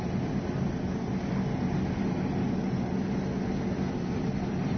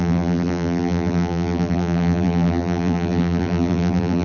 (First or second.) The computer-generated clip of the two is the second